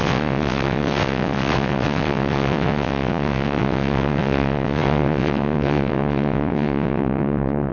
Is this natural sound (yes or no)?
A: no